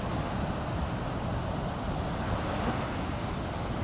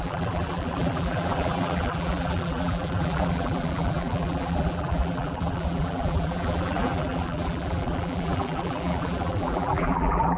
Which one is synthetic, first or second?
second